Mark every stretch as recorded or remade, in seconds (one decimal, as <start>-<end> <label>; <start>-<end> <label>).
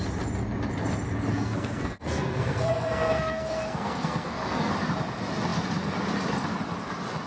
0.0-1.3 recorded; 1.3-4.7 remade; 4.7-7.3 recorded